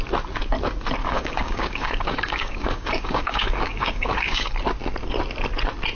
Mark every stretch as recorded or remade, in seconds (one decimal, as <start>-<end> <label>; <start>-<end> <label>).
0.0-1.0 recorded; 1.0-4.5 remade; 4.5-5.9 recorded